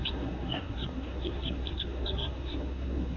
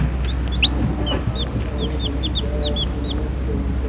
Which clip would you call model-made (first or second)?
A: first